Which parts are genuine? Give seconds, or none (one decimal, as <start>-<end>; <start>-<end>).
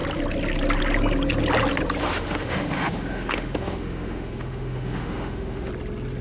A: 0.0-2.0; 5.7-6.2